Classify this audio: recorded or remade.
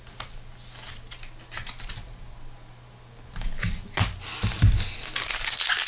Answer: recorded